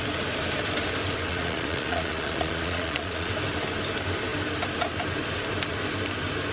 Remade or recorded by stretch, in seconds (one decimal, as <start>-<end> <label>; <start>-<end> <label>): 0.0-1.3 recorded; 1.3-3.3 remade; 3.3-6.5 recorded